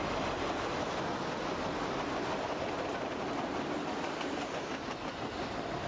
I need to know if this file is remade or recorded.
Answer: recorded